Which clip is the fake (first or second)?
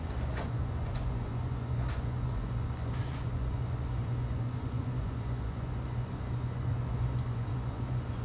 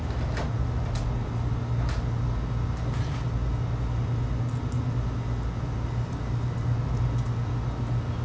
first